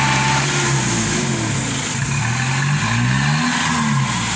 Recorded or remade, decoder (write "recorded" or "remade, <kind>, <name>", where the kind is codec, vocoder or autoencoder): recorded